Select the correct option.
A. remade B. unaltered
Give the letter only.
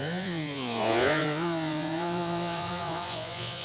A